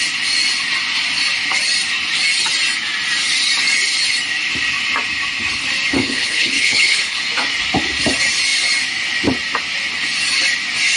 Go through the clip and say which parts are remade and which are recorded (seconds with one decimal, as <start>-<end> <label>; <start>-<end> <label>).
0.0-5.9 recorded; 5.9-7.2 remade; 7.2-11.0 recorded